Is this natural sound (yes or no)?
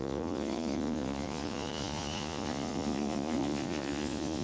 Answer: no